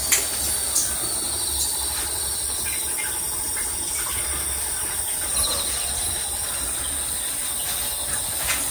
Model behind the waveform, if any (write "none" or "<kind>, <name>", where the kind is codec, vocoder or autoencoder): none